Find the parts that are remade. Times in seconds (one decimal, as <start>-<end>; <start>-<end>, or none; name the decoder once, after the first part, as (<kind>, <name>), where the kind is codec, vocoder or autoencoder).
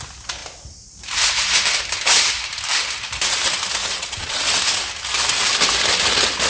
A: 3.8-4.6 (vocoder, WaveNeXt)